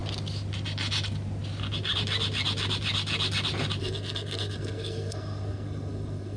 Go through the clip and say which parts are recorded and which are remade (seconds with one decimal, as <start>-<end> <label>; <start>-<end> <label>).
0.0-3.8 recorded; 3.8-6.4 remade

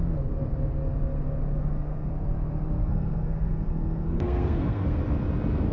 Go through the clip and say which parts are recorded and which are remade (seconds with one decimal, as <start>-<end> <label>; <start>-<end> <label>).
0.0-1.5 recorded; 1.5-2.1 remade; 2.1-2.8 recorded; 2.8-5.0 remade; 5.0-5.7 recorded

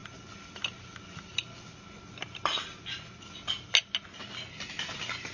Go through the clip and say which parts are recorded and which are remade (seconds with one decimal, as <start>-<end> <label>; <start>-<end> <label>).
0.0-5.3 recorded

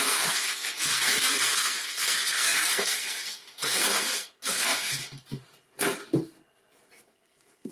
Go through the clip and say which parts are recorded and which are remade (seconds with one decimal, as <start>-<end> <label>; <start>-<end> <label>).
0.0-5.0 remade; 5.0-7.0 recorded; 7.0-7.7 remade